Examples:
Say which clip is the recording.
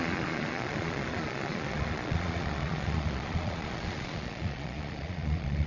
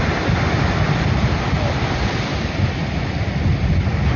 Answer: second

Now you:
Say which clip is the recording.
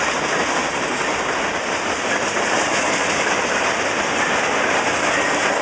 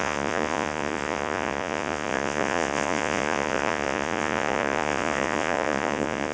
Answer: first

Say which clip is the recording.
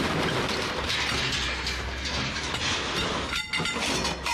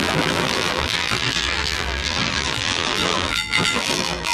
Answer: first